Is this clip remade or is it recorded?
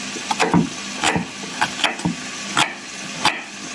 recorded